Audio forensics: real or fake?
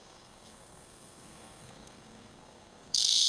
fake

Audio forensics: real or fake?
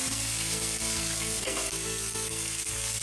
fake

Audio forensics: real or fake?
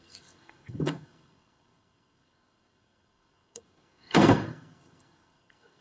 fake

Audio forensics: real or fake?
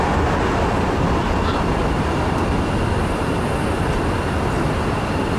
real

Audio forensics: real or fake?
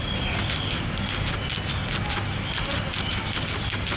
real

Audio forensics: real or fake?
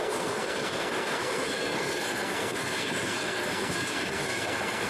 fake